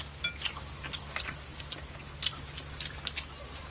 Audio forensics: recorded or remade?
recorded